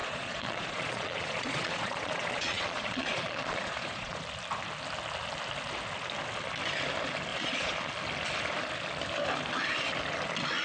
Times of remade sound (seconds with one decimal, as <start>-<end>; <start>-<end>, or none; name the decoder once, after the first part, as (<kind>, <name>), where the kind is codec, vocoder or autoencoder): 0.0-4.2 (vocoder, Vocos); 7.3-7.9